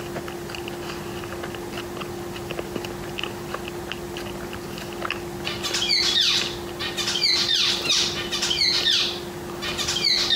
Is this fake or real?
real